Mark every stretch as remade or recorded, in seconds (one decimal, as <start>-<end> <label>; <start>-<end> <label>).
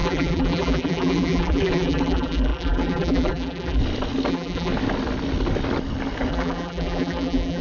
0.0-3.8 remade; 3.8-4.3 recorded; 4.3-4.7 remade; 4.7-6.3 recorded; 6.3-7.6 remade